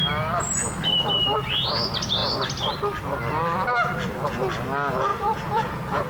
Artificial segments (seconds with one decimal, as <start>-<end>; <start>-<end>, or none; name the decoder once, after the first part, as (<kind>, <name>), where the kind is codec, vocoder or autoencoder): 5.1-6.1 (vocoder, Vocos)